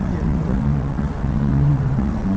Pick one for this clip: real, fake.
fake